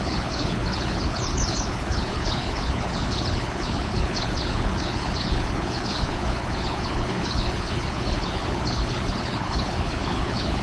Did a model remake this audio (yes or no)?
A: yes